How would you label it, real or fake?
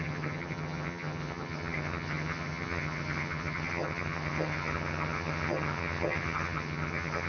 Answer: fake